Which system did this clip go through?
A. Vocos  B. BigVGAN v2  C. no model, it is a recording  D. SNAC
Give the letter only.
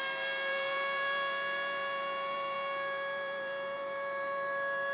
B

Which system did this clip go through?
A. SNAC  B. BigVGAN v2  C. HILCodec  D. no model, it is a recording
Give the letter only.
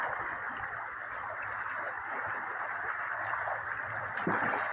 B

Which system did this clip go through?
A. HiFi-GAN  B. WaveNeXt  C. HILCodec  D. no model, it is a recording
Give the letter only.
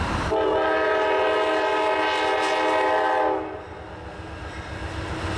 D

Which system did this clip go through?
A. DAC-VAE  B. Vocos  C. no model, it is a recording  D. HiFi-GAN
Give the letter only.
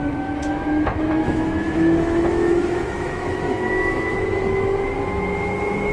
A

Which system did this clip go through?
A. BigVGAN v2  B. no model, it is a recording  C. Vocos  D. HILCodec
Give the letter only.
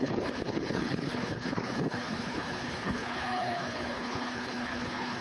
D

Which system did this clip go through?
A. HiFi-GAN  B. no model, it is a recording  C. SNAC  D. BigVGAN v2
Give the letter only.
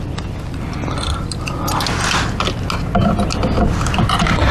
B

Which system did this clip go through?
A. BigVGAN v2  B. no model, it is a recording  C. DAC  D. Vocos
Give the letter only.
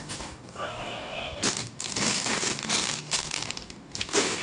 C